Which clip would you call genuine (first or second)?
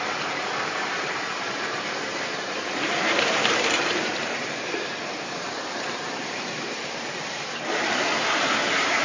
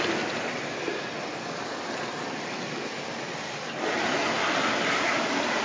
second